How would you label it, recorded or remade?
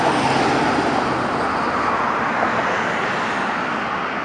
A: recorded